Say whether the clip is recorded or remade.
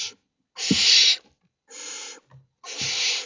recorded